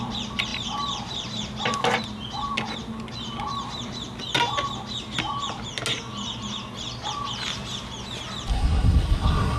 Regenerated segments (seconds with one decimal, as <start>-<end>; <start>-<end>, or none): 8.5-9.6